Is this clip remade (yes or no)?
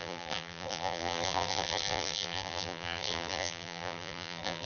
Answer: yes